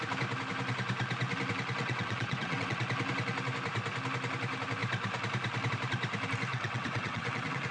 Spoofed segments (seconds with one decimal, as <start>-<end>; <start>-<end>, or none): 1.8-2.8; 6.5-7.7